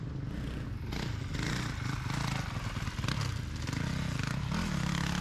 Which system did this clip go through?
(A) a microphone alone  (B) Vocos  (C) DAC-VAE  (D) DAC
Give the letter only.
A